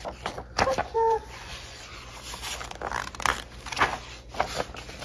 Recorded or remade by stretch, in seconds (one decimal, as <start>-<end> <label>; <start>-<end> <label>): 0.0-0.8 recorded; 0.8-2.1 remade; 2.1-5.0 recorded